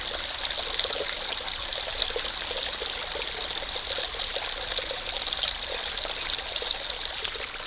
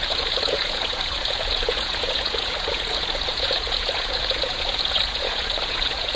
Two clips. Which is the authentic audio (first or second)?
first